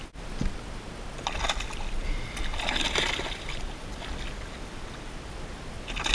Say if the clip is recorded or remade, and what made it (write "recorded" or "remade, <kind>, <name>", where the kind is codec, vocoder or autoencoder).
recorded